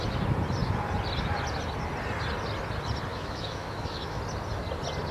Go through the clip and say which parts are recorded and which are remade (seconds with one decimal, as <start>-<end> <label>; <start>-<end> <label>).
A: 0.0-3.1 recorded; 3.1-4.2 remade; 4.2-5.1 recorded